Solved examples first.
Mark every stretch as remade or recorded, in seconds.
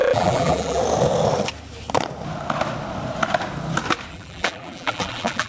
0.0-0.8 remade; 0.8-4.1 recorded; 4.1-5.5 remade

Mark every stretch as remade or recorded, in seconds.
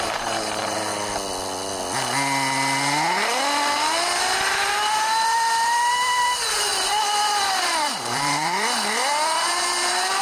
0.0-0.9 remade; 0.9-4.5 recorded; 4.5-10.2 remade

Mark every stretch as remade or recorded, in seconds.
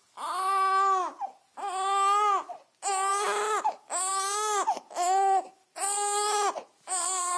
0.0-7.4 recorded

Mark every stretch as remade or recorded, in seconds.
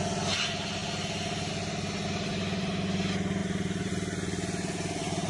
0.0-3.4 recorded; 3.4-3.9 remade; 3.9-5.3 recorded